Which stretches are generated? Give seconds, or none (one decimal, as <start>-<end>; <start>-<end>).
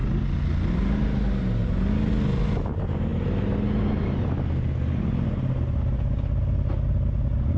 none